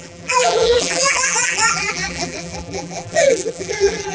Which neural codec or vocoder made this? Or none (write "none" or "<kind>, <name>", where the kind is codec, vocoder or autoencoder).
vocoder, BigVGAN v2